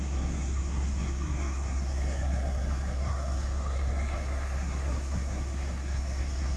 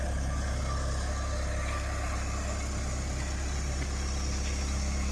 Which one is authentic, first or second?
second